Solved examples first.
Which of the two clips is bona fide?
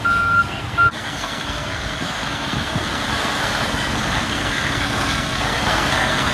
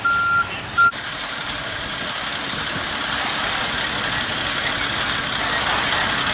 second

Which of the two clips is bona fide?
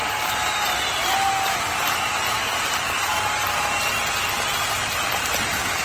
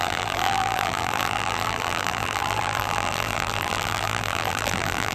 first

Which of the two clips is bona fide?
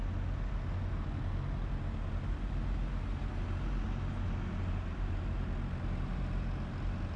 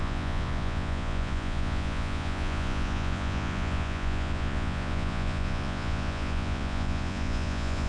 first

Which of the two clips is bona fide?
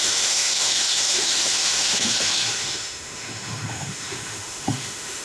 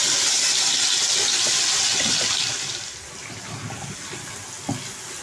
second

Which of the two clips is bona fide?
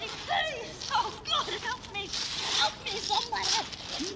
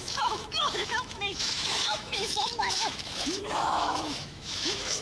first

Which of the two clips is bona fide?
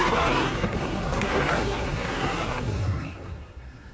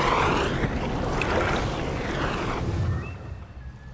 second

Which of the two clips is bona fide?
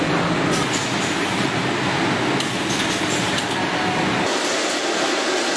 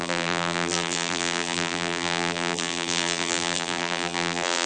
first